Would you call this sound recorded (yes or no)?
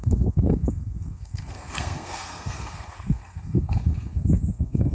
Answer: no